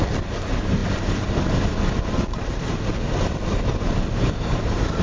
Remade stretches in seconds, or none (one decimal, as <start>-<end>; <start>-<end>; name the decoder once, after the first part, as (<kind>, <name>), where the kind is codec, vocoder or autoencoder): none